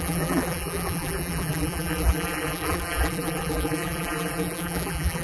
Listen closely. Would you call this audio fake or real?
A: fake